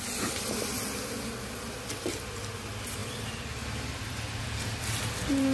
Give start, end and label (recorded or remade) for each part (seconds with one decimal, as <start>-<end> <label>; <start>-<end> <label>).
0.0-5.5 recorded